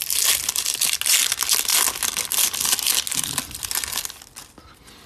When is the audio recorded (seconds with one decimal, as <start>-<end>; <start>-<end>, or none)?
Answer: 0.0-5.1